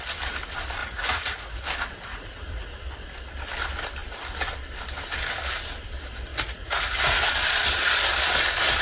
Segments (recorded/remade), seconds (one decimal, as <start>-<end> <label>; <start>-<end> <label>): 0.0-0.8 recorded; 0.8-1.6 remade; 1.6-2.1 recorded; 2.1-2.7 remade; 2.7-6.3 recorded; 6.3-7.3 remade; 7.3-8.8 recorded

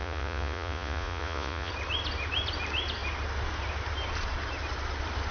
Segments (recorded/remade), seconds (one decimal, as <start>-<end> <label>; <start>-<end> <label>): 0.0-1.7 remade; 1.7-5.3 recorded

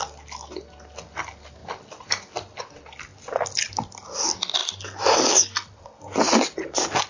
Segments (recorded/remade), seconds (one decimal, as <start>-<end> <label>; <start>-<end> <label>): 0.0-7.1 recorded

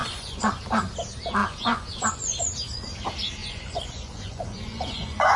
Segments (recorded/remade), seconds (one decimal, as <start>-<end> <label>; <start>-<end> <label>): 0.0-0.6 remade; 0.6-1.4 recorded; 1.4-2.4 remade; 2.4-3.4 recorded; 3.4-5.4 remade

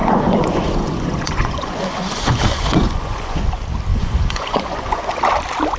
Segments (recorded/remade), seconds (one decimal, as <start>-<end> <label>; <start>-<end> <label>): 0.0-3.5 remade; 3.5-3.9 recorded; 3.9-5.2 remade; 5.2-5.8 recorded

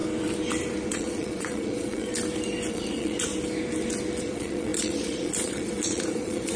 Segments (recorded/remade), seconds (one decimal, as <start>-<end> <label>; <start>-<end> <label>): 0.0-0.9 recorded; 0.9-2.1 remade; 2.1-2.7 recorded; 2.7-3.3 remade; 3.3-4.2 recorded; 4.2-6.6 remade